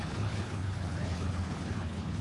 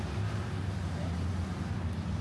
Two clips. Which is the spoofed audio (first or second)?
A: first